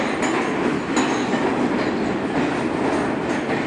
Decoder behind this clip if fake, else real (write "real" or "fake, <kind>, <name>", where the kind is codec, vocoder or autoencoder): real